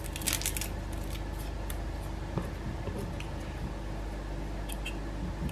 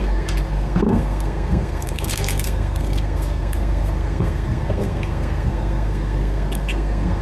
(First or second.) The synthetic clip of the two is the second